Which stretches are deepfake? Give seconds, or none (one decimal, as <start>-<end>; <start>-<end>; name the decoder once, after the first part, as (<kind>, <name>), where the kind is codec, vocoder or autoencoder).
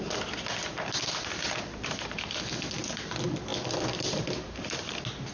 none